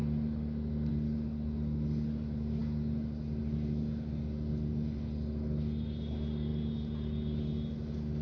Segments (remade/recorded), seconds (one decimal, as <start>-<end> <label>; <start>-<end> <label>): 0.0-8.2 recorded